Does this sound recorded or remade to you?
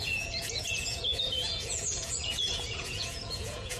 remade